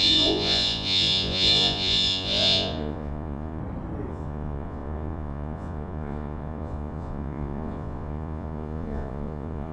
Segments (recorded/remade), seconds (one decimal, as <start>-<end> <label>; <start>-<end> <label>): 0.0-3.6 remade; 3.6-4.1 recorded; 4.1-9.7 remade